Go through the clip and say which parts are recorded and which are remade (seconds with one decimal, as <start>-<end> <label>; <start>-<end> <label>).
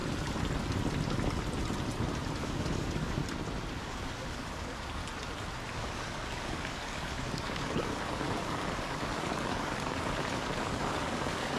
0.0-2.4 recorded; 2.4-3.2 remade; 3.2-3.8 recorded; 3.8-5.0 remade; 5.0-5.7 recorded; 5.7-11.6 remade